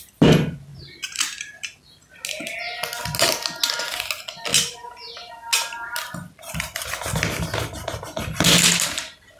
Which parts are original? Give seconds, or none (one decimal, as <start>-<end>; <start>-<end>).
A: 0.0-9.4